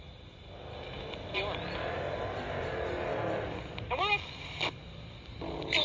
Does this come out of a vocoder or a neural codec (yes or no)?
no